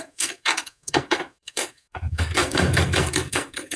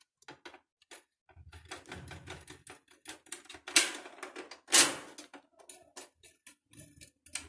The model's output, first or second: first